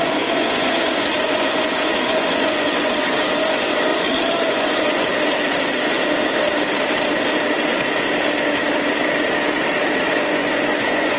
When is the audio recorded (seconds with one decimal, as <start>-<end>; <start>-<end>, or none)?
3.9-4.5; 5.1-10.1